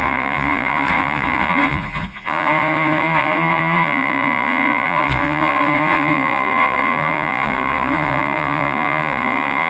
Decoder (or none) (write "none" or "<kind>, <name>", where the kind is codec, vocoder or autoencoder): vocoder, Vocos